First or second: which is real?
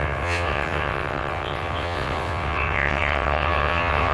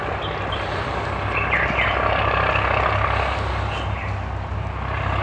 second